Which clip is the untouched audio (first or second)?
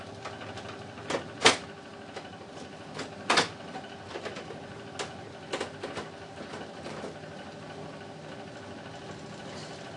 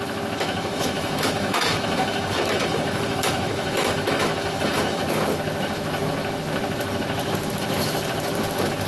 first